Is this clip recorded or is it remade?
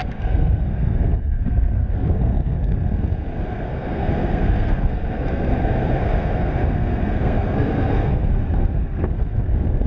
remade